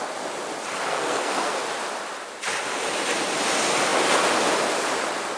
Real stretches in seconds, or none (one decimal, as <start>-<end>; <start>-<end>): 0.0-0.9; 1.6-5.4

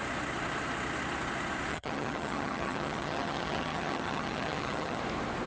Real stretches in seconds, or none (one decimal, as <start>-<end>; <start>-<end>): 0.0-1.7; 5.0-5.5

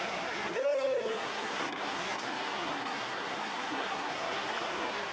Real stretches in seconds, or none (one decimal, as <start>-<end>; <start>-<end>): none

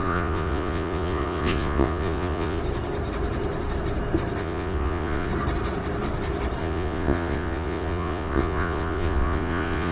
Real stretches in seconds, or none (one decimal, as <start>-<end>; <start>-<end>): 2.6-4.4; 5.3-6.6

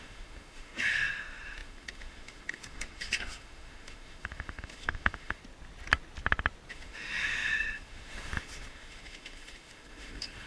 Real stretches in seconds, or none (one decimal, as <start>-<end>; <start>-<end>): 5.4-6.7

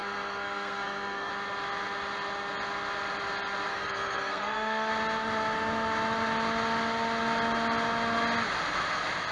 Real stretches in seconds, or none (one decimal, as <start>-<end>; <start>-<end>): 1.3-3.7; 4.9-9.3

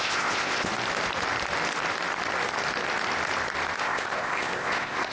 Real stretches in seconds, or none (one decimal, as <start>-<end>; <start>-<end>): 0.7-3.8

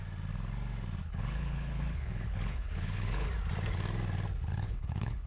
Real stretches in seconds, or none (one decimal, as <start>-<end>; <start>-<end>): 0.0-1.0; 3.3-4.5